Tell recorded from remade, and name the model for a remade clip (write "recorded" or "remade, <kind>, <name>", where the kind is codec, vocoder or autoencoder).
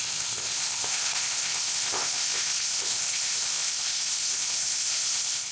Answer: remade, codec, ZipCodec